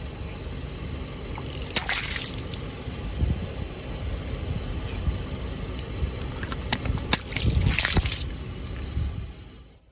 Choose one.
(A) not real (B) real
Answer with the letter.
B